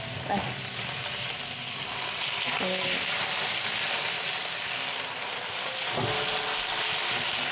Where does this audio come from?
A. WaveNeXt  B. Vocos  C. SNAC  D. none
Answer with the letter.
D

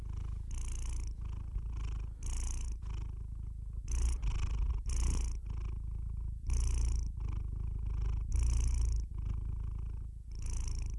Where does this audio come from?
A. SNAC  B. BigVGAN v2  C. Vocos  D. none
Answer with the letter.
D